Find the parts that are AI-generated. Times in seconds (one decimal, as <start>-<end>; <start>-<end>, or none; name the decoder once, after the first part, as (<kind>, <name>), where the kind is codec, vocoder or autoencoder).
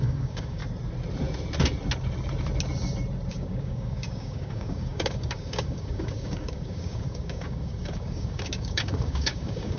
0.0-0.6 (codec, DAC); 3.3-9.8